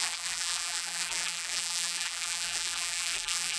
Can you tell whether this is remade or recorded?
remade